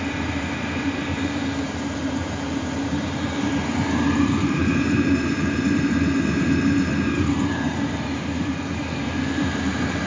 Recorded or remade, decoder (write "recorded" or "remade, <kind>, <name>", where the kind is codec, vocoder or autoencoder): remade, vocoder, BigVGAN v2